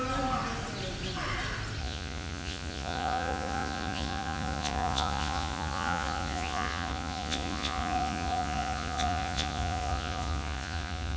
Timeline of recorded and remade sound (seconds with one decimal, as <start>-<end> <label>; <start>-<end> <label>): 0.0-1.8 recorded; 1.8-11.2 remade